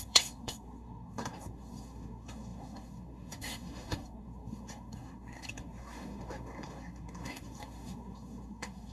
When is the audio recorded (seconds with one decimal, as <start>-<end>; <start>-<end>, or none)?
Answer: none